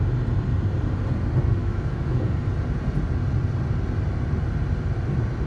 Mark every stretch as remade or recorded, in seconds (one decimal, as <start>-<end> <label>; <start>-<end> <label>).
0.0-1.6 recorded; 1.6-2.2 remade; 2.2-5.5 recorded